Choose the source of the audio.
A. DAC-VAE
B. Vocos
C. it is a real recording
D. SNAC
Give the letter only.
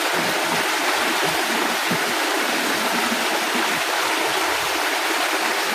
C